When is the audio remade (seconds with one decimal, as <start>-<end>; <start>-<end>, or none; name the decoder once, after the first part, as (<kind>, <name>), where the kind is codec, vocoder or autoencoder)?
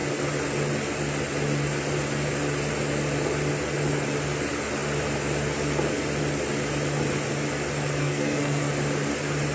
8.0-8.7 (codec, SNAC)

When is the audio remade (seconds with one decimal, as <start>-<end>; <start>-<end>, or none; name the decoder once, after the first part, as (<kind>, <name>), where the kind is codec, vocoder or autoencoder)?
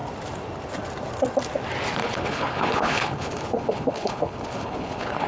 2.0-5.3 (codec, HILCodec)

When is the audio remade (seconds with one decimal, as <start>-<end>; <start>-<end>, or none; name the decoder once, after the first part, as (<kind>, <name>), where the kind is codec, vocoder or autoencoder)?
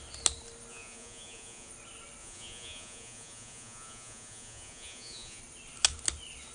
0.7-1.7 (vocoder, Vocos); 2.2-5.4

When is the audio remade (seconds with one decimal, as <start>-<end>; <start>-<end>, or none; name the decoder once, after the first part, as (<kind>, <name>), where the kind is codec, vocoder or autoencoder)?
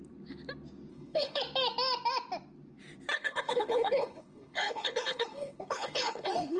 0.9-1.4 (codec, HILCodec); 3.1-6.6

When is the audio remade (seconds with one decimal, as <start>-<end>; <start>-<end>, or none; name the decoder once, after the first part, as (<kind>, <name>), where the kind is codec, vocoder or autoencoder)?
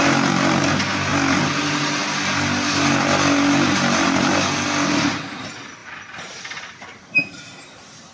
5.8-8.1 (vocoder, BigVGAN v2)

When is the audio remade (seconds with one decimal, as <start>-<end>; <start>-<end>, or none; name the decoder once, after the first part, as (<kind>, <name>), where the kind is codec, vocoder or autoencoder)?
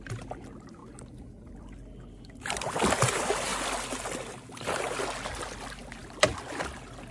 none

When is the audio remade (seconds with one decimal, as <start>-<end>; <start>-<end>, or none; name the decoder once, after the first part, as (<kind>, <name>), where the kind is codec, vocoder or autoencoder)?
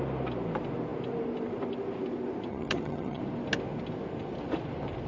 2.5-3.2 (vocoder, HiFi-GAN)